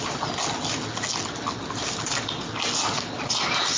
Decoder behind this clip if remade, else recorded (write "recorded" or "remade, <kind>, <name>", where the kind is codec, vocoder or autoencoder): recorded